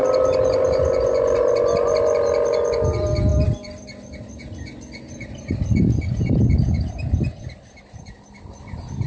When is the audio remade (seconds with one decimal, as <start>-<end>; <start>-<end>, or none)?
none